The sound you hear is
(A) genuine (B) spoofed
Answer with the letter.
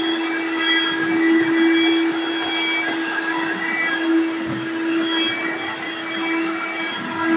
A